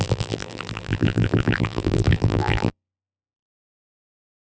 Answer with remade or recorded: remade